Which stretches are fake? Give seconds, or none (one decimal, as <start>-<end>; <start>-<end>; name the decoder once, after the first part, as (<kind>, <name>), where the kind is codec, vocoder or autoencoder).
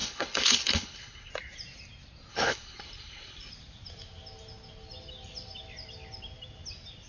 0.0-1.3 (codec, HILCodec); 2.3-3.5